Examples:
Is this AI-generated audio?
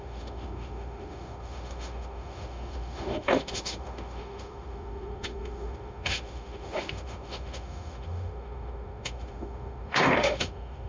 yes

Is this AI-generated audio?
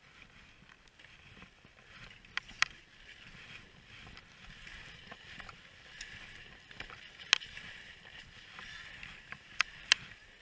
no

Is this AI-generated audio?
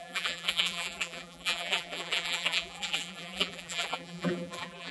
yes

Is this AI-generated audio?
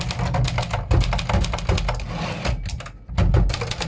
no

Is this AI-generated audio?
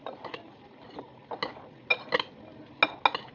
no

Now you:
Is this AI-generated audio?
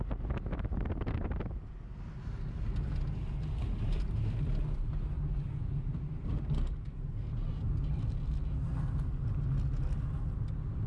no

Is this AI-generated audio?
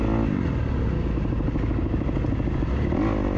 no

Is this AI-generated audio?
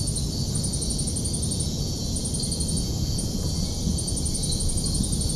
no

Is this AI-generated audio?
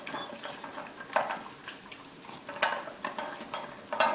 no